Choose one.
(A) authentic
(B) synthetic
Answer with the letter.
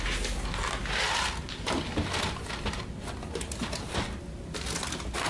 A